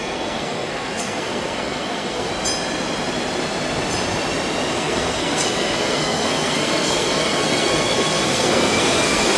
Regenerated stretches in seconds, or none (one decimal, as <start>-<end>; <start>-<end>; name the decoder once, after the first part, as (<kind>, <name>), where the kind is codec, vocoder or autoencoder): 0.0-2.3 (codec, SNAC); 4.7-9.4